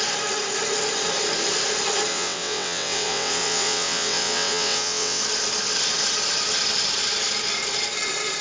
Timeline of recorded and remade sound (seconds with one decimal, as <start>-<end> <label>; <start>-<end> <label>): 0.0-2.1 recorded; 2.1-5.2 remade; 5.2-8.4 recorded